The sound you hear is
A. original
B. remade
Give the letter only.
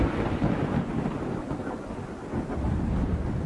B